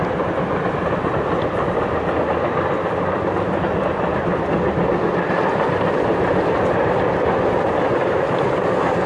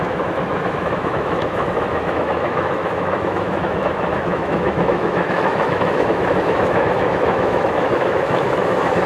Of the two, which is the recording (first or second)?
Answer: first